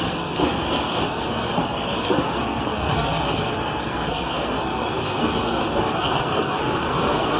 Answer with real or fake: fake